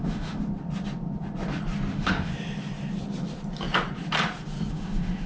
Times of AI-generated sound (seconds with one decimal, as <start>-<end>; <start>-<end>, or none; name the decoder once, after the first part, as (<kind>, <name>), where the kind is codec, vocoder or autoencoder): 0.0-0.4 (autoencoder, DAC-VAE); 1.9-2.3; 4.7-5.3